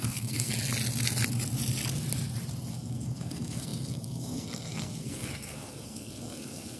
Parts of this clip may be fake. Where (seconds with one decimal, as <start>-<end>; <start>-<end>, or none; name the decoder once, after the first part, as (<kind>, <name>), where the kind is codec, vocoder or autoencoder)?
0.0-0.5 (codec, SNAC); 2.7-6.8